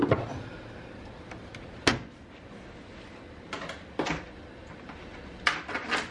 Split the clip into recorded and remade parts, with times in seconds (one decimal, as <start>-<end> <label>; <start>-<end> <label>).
0.0-6.1 recorded